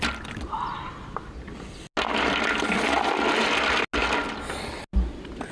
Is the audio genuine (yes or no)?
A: yes